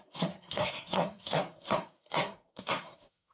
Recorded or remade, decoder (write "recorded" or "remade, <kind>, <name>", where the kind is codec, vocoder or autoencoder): remade, codec, SNAC